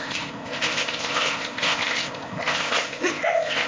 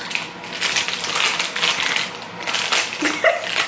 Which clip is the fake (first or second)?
first